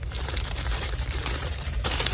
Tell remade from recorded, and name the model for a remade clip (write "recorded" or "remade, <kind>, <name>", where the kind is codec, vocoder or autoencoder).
remade, vocoder, BigVGAN v2